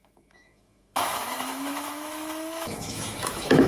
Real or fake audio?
fake